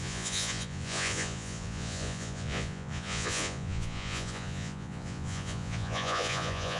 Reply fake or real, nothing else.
fake